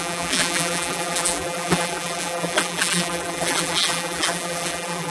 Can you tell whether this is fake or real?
fake